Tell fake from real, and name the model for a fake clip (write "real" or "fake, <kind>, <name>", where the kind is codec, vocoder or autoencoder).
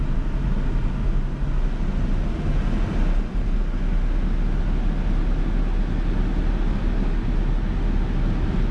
real